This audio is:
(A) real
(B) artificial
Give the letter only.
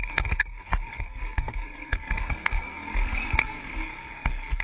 B